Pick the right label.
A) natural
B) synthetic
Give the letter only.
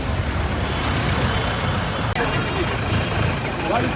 A